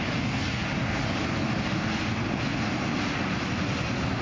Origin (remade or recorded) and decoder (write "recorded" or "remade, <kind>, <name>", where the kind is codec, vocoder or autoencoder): recorded